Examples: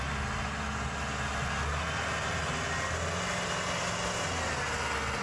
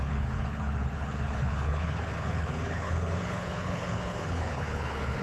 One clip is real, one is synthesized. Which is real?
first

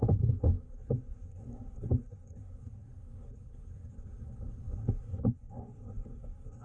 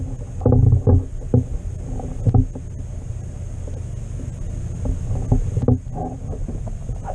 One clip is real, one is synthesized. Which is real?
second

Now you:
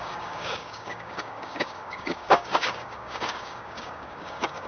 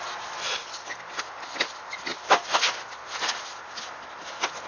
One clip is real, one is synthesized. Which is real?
second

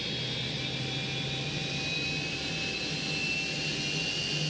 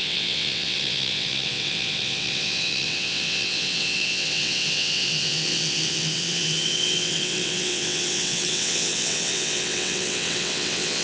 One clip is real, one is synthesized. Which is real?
first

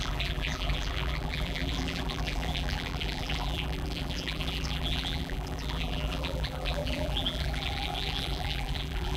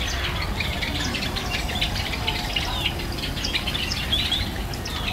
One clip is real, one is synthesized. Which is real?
second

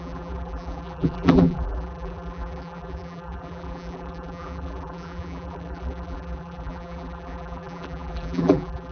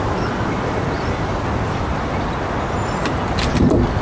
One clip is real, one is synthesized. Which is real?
second